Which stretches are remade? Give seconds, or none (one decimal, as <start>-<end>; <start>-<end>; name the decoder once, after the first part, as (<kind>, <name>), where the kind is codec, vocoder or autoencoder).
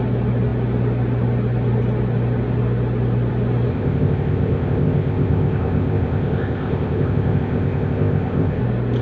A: 3.7-8.6 (codec, ZipCodec)